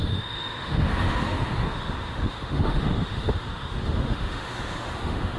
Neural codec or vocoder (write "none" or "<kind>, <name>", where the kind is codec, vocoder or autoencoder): autoencoder, DAC-VAE